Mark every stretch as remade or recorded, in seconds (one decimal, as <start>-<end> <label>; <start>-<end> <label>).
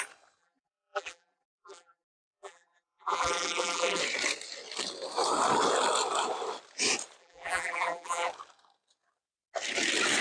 0.0-0.4 recorded; 0.4-4.0 remade; 4.0-7.2 recorded; 7.2-8.3 remade; 8.3-10.2 recorded